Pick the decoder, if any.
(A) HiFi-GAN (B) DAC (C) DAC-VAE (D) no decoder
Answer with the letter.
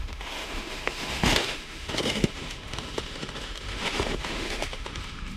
C